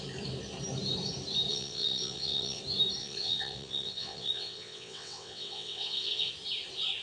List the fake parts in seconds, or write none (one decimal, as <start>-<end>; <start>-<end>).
1.5-2.6; 3.0-6.3